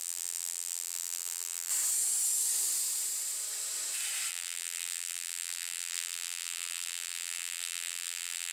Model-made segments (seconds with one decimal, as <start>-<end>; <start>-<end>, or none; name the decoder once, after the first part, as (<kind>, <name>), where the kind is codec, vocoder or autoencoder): 0.0-1.7 (vocoder, BigVGAN v2); 4.3-8.5